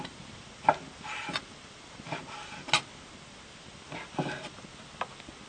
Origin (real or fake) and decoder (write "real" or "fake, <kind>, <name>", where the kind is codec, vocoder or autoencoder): real